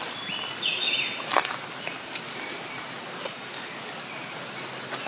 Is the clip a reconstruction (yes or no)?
no